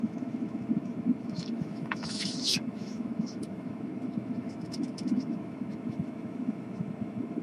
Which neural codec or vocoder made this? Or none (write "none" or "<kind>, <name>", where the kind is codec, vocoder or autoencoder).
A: autoencoder, DAC-VAE